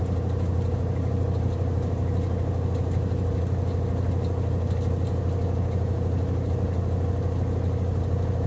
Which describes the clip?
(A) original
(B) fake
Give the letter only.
A